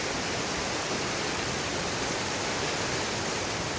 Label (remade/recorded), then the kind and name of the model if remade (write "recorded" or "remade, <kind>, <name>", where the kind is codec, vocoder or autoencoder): recorded